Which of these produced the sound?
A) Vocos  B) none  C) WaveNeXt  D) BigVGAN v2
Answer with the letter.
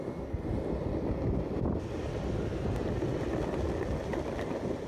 B